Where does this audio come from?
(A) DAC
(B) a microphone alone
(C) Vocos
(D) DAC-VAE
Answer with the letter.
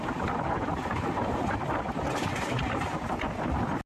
B